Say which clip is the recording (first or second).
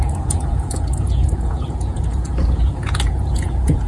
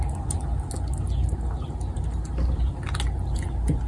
second